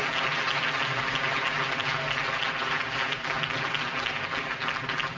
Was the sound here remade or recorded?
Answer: recorded